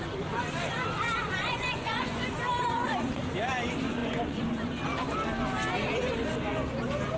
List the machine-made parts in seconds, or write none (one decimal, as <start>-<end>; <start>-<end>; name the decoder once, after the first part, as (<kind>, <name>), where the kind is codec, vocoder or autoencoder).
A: 1.4-2.3 (vocoder, Vocos); 4.0-4.7